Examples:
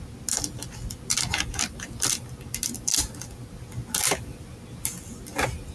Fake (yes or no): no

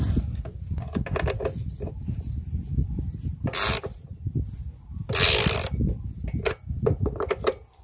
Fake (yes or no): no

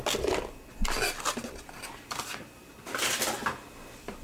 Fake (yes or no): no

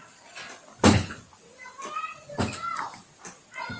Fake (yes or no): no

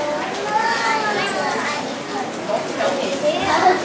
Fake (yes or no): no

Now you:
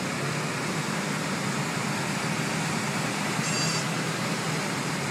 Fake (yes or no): no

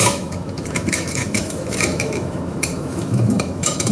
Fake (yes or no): yes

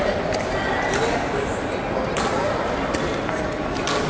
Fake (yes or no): no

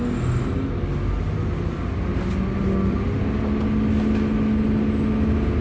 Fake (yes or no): no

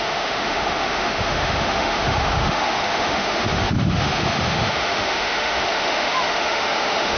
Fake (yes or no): yes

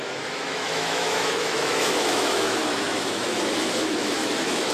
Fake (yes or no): yes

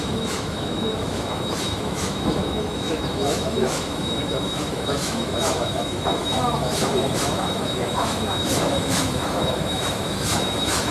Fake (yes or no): yes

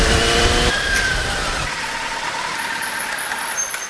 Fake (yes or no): no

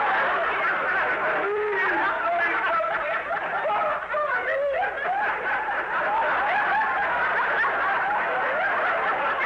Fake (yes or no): no